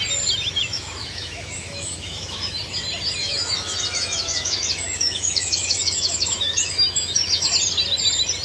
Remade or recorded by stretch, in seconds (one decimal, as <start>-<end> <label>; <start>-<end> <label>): 0.0-0.6 recorded; 0.6-2.6 remade; 2.6-3.2 recorded; 3.2-7.5 remade; 7.5-8.4 recorded